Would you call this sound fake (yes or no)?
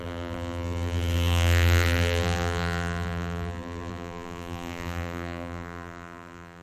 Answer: yes